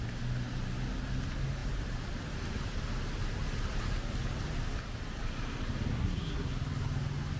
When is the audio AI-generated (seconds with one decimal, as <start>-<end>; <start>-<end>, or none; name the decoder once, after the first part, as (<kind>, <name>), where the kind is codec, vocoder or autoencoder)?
5.9-6.5 (codec, SNAC)